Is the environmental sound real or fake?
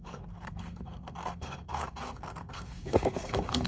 fake